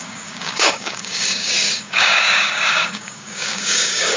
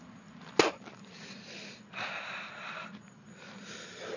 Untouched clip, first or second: second